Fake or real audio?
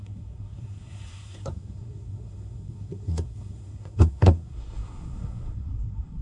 fake